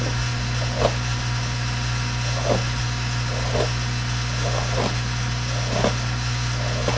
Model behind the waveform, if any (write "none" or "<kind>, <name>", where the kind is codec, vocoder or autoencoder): none